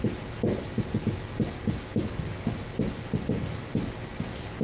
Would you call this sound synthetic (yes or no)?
no